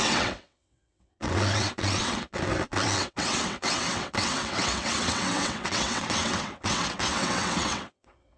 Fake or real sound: fake